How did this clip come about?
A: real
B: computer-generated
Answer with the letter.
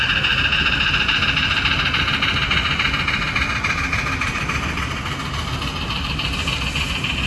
A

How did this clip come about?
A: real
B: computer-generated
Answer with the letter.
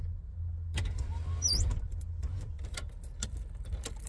A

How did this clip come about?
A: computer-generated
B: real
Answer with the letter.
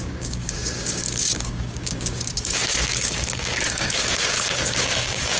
A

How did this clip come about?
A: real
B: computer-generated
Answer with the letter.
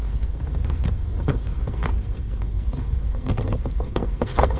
B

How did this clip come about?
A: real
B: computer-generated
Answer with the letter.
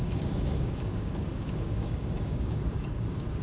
B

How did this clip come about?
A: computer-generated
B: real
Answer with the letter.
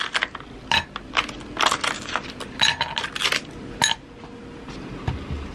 B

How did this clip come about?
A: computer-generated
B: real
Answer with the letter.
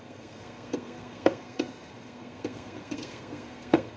A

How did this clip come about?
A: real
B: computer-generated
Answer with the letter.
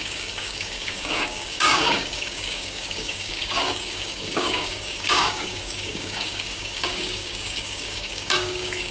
B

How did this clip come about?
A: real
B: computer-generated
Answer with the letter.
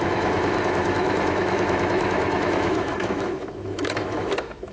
B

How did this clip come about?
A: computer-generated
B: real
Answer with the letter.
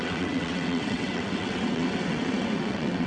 A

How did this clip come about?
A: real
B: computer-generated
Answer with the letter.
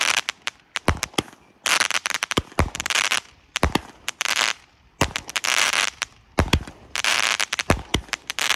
B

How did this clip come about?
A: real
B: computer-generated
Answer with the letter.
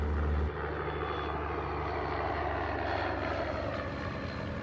A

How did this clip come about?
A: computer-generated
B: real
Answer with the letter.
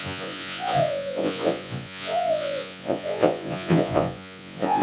A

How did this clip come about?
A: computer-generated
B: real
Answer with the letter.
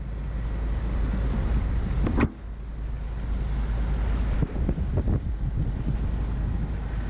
B